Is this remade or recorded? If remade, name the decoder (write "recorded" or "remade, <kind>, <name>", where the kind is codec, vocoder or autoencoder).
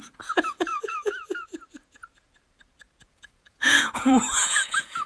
remade, vocoder, Vocos